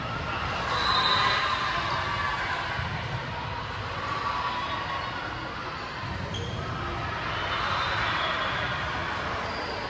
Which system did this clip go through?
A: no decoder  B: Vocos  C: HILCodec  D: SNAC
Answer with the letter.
A